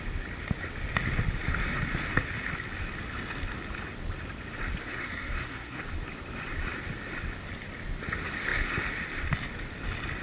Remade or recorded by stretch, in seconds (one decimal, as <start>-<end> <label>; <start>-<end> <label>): 0.0-4.8 recorded; 4.8-5.8 remade; 5.8-10.2 recorded